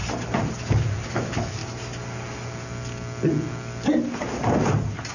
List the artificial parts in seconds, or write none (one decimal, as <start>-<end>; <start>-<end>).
1.1-1.6